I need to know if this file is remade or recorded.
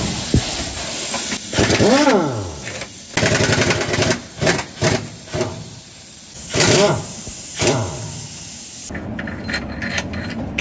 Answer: recorded